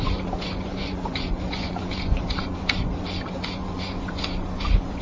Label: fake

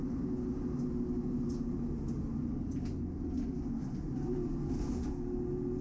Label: real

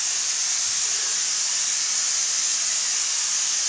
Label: real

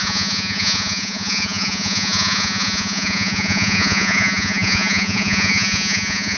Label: fake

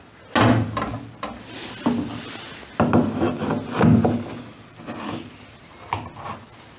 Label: real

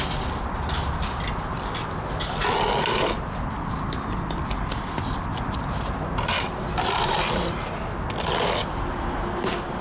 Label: real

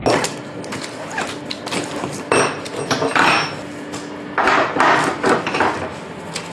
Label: real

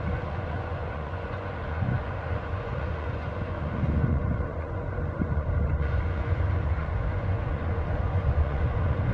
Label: fake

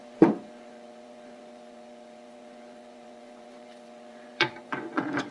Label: fake